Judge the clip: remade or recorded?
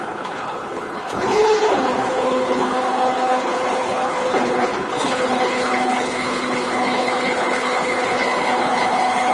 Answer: remade